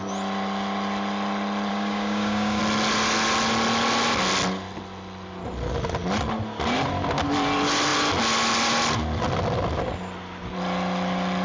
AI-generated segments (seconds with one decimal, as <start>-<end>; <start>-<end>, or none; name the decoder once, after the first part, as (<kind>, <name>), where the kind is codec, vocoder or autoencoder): 1.7-2.6 (codec, DAC)